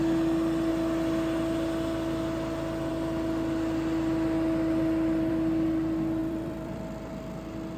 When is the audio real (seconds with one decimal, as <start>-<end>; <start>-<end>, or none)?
0.0-6.2; 7.2-7.8